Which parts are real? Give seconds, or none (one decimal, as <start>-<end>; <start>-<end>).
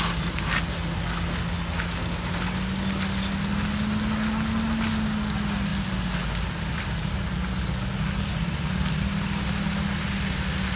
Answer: 0.0-10.8